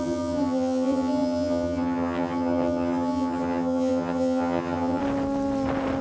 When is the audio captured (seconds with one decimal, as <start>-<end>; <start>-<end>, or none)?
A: 5.0-6.0